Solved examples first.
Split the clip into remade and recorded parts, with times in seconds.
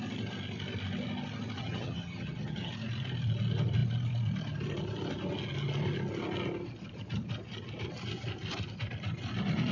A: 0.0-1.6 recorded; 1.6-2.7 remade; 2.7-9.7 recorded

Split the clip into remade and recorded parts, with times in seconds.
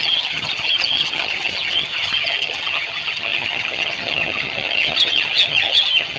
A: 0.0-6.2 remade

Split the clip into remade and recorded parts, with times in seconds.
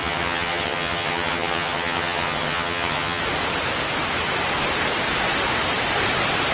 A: 0.0-3.2 remade; 3.2-6.5 recorded